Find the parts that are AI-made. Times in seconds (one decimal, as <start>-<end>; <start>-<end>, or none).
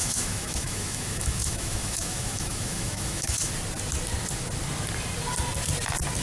0.0-3.5